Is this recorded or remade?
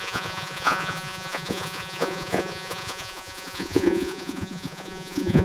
remade